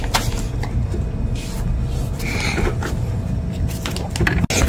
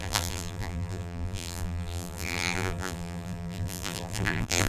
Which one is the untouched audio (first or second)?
first